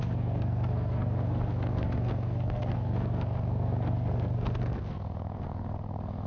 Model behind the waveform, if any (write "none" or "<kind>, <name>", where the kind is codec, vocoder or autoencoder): codec, SNAC